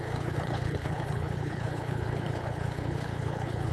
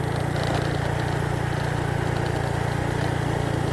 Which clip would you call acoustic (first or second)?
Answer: second